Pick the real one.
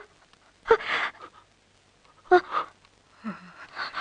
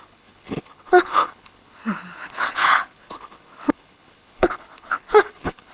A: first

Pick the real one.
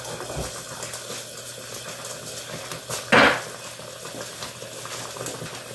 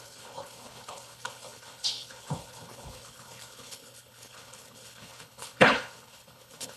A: first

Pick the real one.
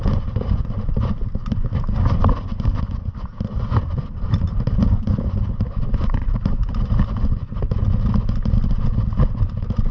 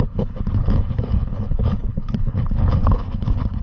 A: first